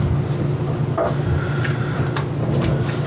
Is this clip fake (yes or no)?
no